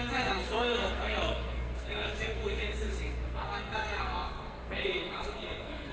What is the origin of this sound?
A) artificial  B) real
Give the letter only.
A